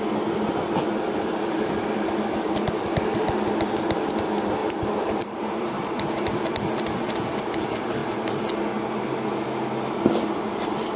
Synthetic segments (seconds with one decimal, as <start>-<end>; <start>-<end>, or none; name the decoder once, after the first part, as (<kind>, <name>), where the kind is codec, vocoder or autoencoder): 4.6-6.0 (vocoder, BigVGAN v2)